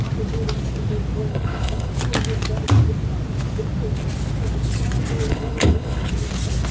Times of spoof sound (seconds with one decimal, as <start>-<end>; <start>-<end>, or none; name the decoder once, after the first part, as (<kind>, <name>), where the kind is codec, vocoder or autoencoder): 1.3-1.9 (codec, HILCodec); 5.3-6.1